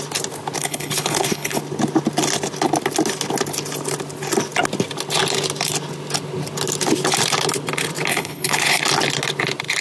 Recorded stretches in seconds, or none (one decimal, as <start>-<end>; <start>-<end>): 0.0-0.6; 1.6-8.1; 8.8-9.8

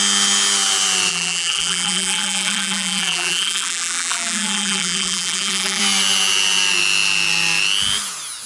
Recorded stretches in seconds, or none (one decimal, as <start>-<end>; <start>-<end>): 0.0-1.1; 5.8-8.5

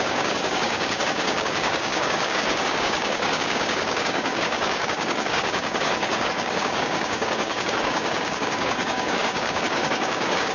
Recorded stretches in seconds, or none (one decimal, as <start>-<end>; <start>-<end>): none

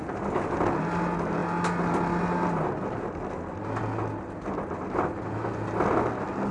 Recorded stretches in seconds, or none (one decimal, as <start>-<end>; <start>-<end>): 0.0-6.5

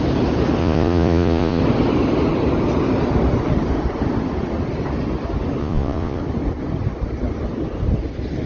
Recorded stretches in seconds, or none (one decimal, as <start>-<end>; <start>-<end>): 0.0-0.6; 1.6-5.6; 6.2-8.5